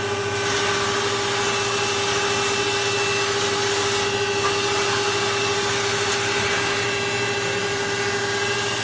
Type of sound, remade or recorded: recorded